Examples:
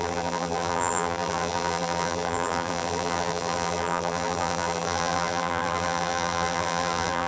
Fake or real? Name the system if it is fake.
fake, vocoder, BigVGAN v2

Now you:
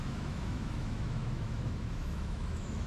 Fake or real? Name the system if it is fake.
fake, autoencoder, DAC-VAE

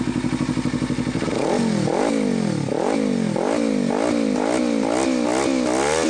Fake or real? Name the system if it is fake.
real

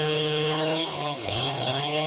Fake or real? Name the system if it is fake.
fake, codec, HILCodec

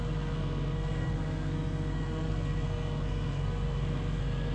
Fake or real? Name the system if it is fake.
fake, codec, SNAC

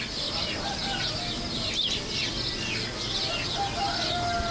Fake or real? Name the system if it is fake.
real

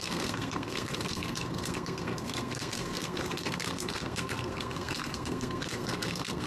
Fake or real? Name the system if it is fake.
fake, codec, SNAC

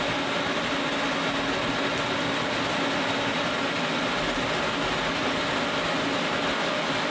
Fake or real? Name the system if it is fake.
real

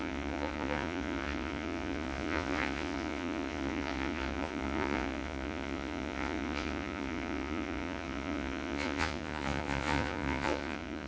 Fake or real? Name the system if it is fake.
fake, vocoder, Vocos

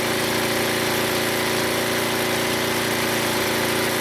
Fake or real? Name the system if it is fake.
real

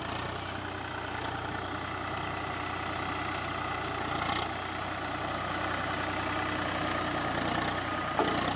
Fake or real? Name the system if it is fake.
real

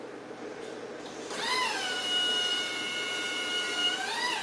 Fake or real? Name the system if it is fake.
fake, vocoder, BigVGAN v2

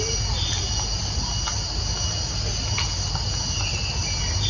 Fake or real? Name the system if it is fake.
real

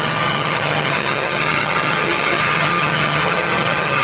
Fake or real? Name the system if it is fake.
fake, vocoder, HiFi-GAN